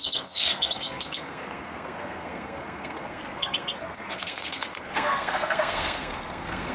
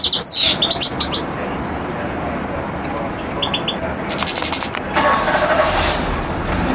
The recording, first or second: second